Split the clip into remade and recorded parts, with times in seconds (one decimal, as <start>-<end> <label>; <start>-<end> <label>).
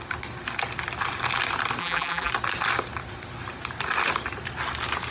0.0-1.8 recorded; 1.8-2.3 remade; 2.3-5.1 recorded